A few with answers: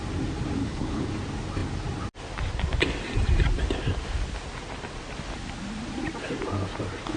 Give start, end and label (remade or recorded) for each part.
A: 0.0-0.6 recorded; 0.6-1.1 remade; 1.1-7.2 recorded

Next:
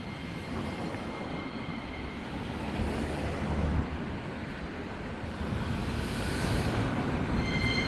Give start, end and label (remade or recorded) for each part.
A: 0.0-1.3 recorded; 1.3-2.8 remade; 2.8-5.8 recorded; 5.8-6.8 remade; 6.8-7.9 recorded

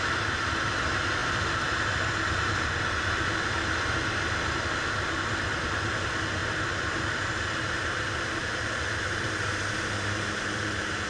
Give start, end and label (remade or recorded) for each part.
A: 0.0-6.4 recorded; 6.4-7.2 remade; 7.2-8.4 recorded; 8.4-11.1 remade